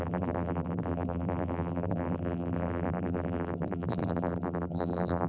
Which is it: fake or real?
fake